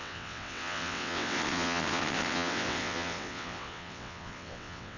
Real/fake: fake